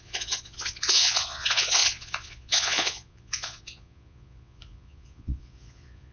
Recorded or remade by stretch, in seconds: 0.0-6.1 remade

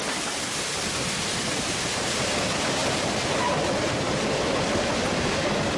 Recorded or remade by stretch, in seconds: 0.0-2.8 recorded; 2.8-4.9 remade; 4.9-5.8 recorded

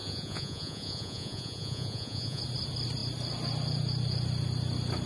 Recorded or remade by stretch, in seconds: 0.0-2.4 remade; 2.4-5.1 recorded

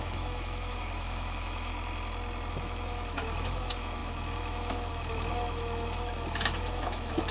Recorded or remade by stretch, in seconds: 0.0-1.7 remade; 1.7-2.5 recorded; 2.5-7.3 remade

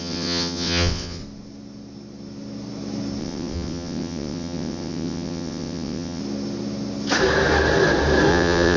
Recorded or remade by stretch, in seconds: 0.0-1.2 remade; 1.2-3.2 recorded; 3.2-6.2 remade; 6.2-8.3 recorded; 8.3-8.8 remade